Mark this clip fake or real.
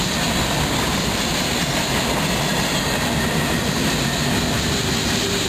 real